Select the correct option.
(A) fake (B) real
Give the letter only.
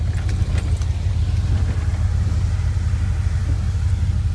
B